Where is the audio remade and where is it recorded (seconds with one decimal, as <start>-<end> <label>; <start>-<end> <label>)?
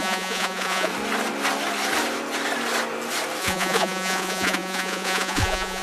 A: 0.0-0.9 remade; 0.9-3.4 recorded; 3.4-5.8 remade